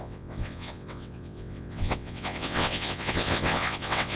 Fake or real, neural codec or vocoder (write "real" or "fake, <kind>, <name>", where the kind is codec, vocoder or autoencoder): fake, vocoder, WaveNeXt